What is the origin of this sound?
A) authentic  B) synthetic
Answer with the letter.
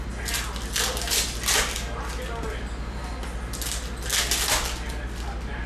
A